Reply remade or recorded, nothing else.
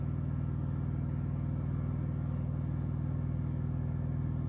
recorded